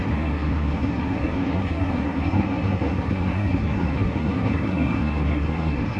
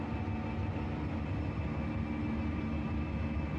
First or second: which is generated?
first